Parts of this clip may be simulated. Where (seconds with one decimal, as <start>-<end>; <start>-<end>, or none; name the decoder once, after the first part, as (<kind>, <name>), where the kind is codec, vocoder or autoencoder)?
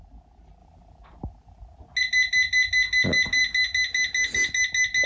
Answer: none